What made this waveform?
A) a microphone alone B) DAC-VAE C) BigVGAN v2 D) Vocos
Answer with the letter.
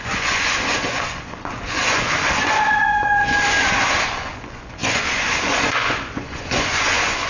D